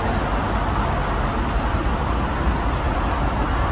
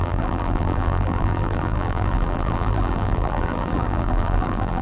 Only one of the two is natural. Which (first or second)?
first